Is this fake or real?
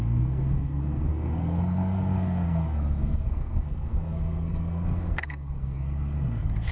fake